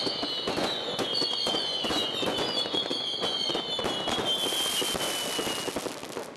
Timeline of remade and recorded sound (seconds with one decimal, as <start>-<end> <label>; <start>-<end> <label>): 0.0-3.6 remade; 3.6-6.4 recorded